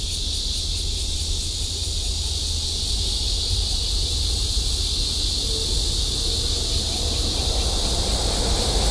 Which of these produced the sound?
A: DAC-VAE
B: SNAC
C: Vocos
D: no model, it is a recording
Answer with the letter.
D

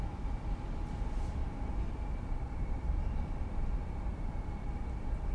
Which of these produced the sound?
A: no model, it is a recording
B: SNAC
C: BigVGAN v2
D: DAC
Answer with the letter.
C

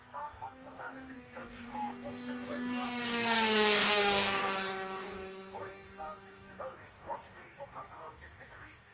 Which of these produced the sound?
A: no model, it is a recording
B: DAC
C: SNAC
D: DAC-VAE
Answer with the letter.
B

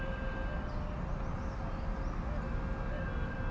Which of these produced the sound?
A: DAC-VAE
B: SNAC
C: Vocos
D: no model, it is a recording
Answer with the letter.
D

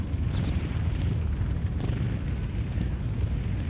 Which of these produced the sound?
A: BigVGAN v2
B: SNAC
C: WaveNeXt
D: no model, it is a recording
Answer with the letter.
D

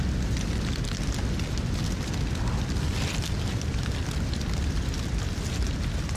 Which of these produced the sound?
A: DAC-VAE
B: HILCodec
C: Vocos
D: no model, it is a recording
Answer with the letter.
D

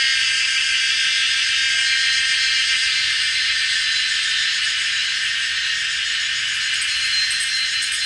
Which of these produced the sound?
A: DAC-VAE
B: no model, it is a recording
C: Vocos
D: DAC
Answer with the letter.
B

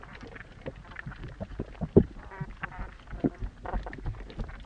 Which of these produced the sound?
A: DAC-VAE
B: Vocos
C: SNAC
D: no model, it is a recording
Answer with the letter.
D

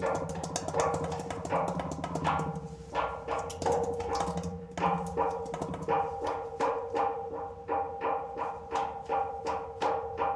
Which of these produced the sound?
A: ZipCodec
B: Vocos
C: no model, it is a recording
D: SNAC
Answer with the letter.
C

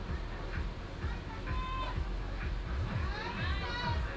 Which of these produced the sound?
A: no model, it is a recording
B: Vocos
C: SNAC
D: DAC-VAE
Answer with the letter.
A